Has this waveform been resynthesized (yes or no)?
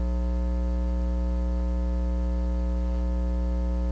no